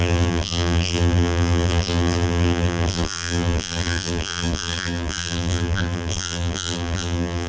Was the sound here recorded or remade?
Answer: remade